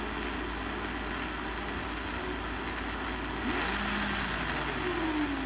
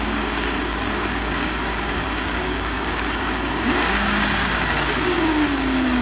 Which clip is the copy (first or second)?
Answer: second